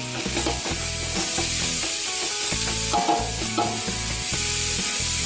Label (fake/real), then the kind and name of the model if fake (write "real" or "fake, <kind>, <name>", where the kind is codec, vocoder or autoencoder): real